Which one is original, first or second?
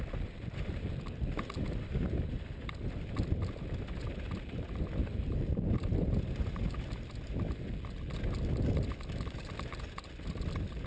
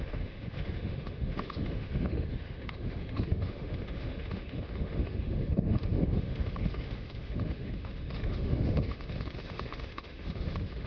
first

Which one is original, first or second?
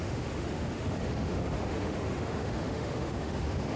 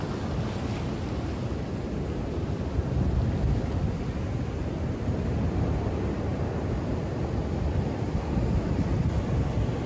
second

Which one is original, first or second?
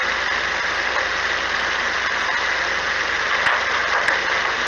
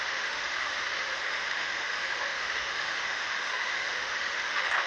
first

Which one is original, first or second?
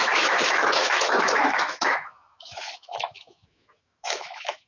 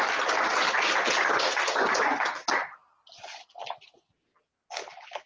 second